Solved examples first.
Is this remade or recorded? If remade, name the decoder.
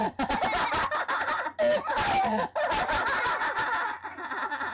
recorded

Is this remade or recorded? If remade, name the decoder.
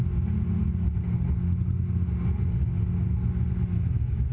recorded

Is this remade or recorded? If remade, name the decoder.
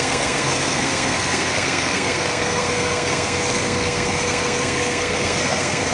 remade, codec, SNAC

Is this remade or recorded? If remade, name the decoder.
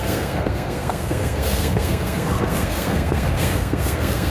remade, codec, SNAC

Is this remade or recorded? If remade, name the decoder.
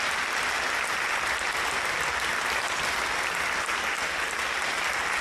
recorded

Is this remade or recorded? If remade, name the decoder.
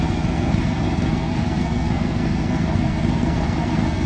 remade, codec, SNAC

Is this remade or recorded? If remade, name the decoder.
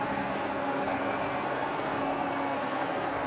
remade, codec, SNAC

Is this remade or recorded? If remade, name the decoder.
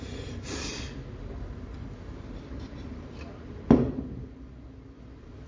recorded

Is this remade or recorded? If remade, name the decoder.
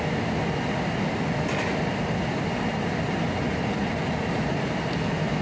recorded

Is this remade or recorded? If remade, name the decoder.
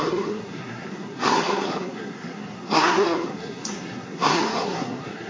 remade, codec, SNAC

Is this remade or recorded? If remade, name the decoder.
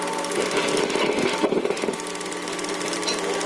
recorded